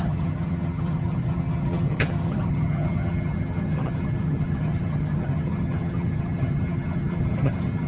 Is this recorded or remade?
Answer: remade